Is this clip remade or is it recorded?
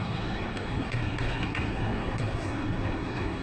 remade